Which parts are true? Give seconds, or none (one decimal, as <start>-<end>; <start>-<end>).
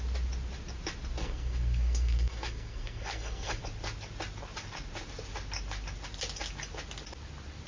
0.0-1.2; 3.6-7.7